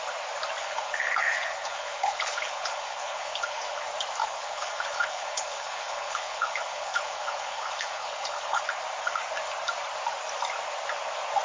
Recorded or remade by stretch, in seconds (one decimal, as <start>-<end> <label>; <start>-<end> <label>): 0.0-0.6 recorded; 0.6-3.8 remade; 3.8-4.2 recorded; 4.2-8.6 remade; 8.6-11.4 recorded